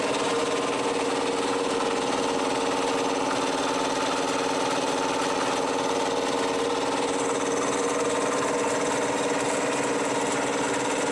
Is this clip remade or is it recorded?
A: recorded